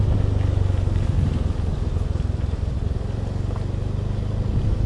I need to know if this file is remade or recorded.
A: recorded